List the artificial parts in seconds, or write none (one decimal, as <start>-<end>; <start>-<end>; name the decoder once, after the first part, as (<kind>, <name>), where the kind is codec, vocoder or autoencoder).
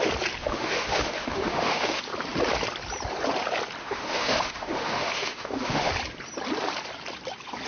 0.4-2.0 (autoencoder, DAC-VAE); 3.8-5.9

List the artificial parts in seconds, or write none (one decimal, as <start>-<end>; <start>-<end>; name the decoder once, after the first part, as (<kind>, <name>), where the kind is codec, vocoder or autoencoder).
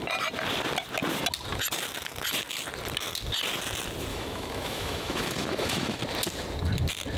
4.1-6.0 (autoencoder, DAC-VAE)